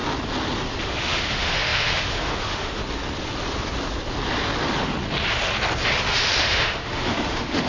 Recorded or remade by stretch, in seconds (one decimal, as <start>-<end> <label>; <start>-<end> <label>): 0.0-0.8 recorded; 0.8-2.8 remade; 2.8-6.0 recorded; 6.0-7.7 remade

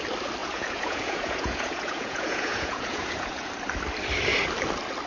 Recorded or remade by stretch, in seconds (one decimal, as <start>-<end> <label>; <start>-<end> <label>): 0.0-0.4 recorded; 0.4-3.5 remade; 3.5-5.1 recorded

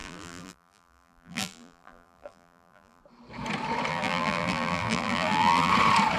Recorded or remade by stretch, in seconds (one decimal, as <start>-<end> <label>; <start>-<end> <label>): 0.0-3.0 remade; 3.0-3.9 recorded; 3.9-5.7 remade; 5.7-6.2 recorded

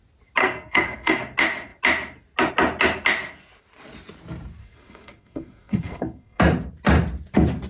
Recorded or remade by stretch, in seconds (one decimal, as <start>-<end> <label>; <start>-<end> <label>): 0.0-0.4 recorded; 0.4-1.2 remade; 1.2-4.6 recorded; 4.6-6.4 remade; 6.4-7.7 recorded

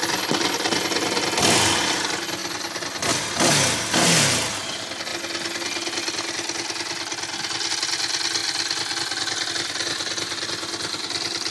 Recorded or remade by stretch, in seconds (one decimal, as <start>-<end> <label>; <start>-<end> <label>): 0.0-11.5 recorded

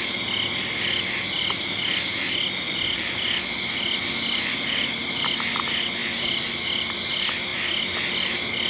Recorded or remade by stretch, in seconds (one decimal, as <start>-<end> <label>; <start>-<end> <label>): 0.0-8.7 recorded

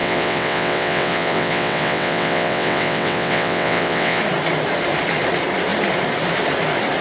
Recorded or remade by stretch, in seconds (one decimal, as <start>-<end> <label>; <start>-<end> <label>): 0.0-4.2 remade; 4.2-7.0 recorded